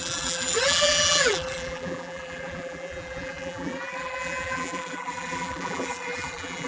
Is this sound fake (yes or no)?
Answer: yes